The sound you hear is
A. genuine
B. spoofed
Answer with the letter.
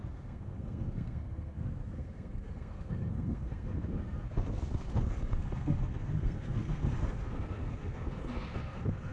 B